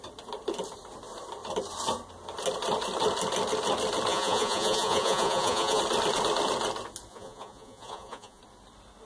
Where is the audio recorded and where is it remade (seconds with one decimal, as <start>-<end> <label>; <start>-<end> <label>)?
0.0-4.1 recorded; 4.1-5.8 remade; 5.8-7.1 recorded; 7.1-8.4 remade; 8.4-9.1 recorded